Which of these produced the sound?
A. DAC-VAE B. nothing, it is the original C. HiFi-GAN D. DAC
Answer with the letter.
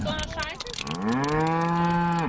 B